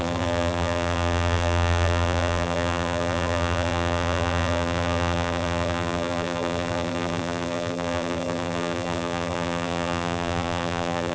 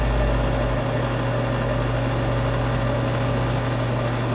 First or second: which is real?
second